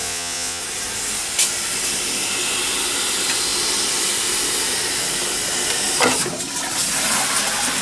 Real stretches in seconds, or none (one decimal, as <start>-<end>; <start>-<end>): 0.6-7.8